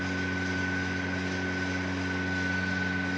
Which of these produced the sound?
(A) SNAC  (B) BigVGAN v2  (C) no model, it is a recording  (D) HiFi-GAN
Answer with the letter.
C